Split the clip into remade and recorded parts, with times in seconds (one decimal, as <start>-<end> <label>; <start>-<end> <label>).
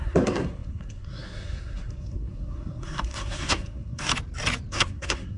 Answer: 0.0-4.1 remade; 4.1-4.7 recorded; 4.7-5.4 remade